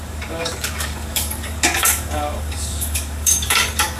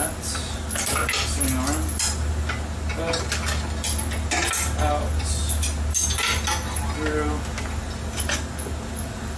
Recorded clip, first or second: second